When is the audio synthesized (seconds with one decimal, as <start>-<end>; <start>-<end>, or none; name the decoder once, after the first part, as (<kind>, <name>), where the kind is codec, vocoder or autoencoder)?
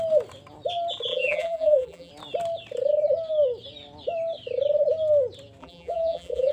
1.1-2.1 (vocoder, BigVGAN v2); 5.6-6.5